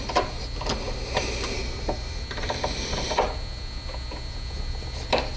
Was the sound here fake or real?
real